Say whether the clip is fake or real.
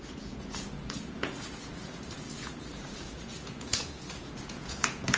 fake